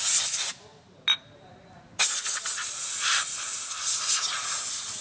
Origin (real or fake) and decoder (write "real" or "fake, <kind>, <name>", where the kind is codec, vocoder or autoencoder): real